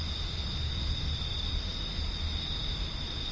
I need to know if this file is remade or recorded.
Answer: recorded